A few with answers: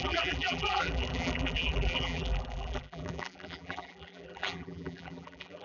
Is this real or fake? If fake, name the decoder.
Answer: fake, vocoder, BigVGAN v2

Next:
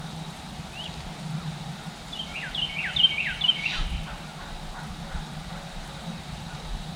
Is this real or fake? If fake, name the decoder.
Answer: real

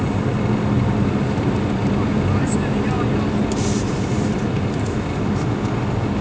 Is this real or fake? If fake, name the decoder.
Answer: real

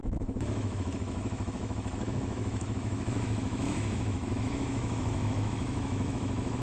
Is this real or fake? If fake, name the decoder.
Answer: fake, autoencoder, DAC-VAE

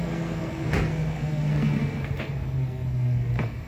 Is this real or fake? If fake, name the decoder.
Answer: fake, codec, SNAC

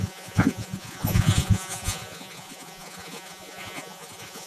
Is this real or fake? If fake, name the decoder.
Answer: fake, vocoder, Vocos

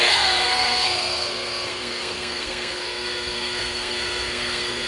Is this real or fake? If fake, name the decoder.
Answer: fake, codec, SNAC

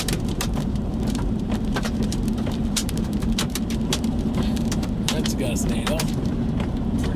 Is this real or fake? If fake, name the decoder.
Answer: fake, vocoder, BigVGAN v2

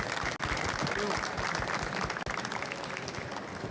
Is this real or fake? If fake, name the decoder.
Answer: real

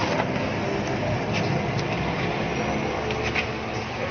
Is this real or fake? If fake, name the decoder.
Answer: real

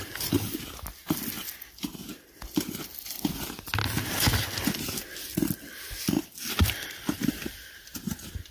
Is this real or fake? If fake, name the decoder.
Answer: real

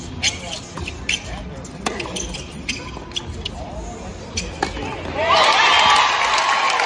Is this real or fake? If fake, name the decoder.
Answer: real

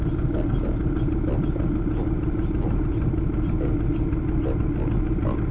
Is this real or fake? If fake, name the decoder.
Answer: real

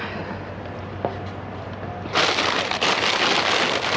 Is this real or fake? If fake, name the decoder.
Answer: real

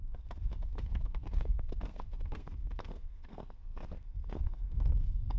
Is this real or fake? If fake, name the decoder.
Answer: fake, codec, SNAC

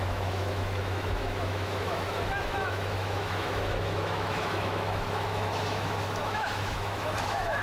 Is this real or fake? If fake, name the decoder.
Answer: fake, autoencoder, DAC-VAE